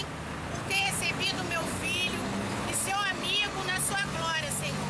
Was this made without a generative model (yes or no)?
yes